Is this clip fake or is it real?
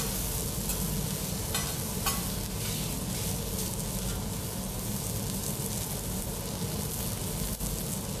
real